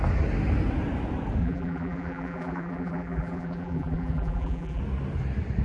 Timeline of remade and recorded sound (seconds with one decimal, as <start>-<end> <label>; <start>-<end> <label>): 0.0-1.4 recorded; 1.4-4.8 remade; 4.8-5.6 recorded